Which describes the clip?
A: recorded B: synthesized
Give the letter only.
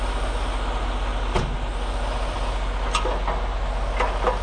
A